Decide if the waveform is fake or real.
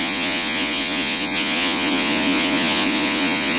fake